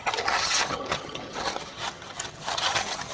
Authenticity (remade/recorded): remade